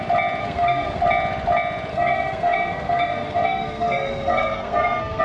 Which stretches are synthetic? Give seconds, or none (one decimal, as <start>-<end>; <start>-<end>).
0.4-1.0; 1.9-5.2